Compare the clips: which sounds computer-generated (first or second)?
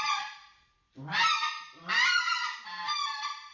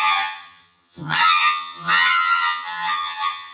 second